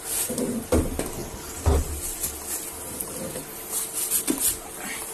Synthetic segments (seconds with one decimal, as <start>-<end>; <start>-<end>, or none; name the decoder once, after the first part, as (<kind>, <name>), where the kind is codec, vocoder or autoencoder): none